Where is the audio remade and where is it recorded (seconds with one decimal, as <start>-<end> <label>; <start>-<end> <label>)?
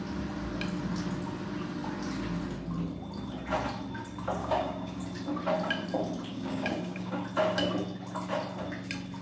0.0-4.4 recorded; 4.4-5.0 remade; 5.0-6.3 recorded; 6.3-7.2 remade; 7.2-9.2 recorded